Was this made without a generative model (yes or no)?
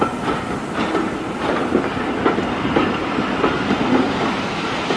yes